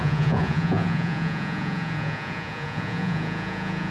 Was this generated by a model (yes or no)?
yes